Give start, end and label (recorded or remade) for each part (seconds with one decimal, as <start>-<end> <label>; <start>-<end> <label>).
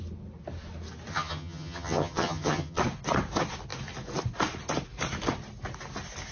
0.0-1.1 recorded; 1.1-2.8 remade; 2.8-6.3 recorded